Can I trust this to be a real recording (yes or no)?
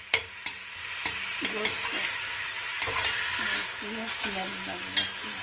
yes